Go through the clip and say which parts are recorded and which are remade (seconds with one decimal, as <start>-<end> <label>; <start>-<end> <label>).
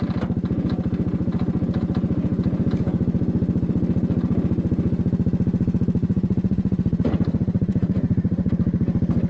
0.0-6.0 recorded; 6.0-8.5 remade; 8.5-9.3 recorded